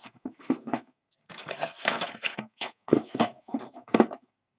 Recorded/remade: remade